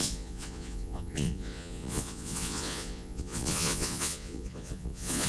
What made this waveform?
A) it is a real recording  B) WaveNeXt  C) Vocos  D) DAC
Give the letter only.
C